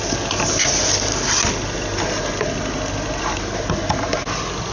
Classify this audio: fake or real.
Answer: real